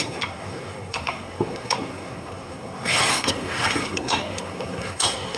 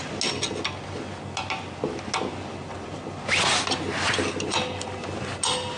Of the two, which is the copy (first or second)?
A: first